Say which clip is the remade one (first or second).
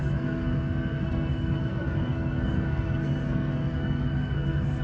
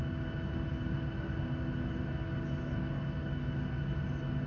first